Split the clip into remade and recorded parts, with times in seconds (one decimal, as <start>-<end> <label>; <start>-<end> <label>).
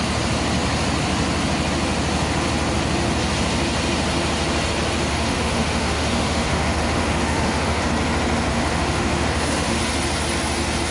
0.0-5.1 recorded; 5.1-7.8 remade; 7.8-8.5 recorded; 8.5-9.8 remade; 9.8-10.9 recorded